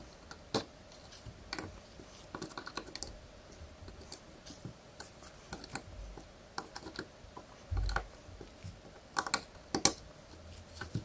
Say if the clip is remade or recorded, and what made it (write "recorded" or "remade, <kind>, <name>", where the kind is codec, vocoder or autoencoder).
recorded